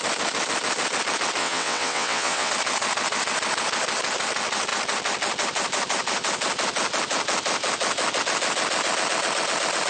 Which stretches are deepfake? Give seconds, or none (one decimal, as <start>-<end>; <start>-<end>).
1.4-2.5